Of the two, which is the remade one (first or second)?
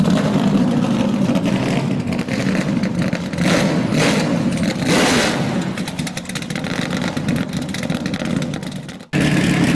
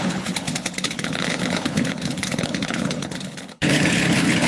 second